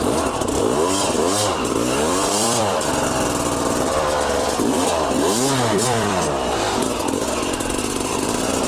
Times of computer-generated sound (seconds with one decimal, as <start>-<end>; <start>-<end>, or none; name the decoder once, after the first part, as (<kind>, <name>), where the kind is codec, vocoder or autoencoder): 0.0-6.8 (vocoder, BigVGAN v2); 8.1-8.7